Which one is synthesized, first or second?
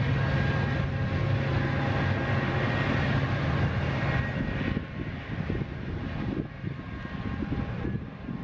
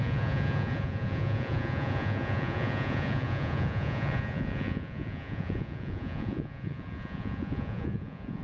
second